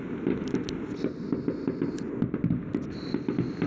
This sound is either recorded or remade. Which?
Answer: recorded